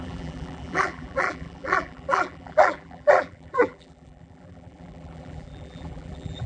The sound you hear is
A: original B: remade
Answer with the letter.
B